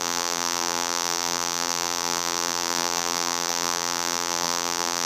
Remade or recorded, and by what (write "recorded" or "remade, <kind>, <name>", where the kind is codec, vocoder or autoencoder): remade, vocoder, BigVGAN v2